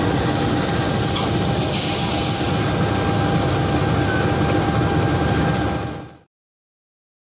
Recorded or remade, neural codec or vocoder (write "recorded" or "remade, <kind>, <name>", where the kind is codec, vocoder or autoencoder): recorded